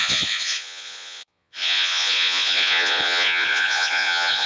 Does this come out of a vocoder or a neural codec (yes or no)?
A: yes